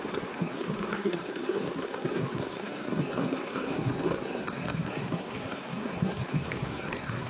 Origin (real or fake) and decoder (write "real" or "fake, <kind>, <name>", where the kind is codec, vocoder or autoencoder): fake, codec, SNAC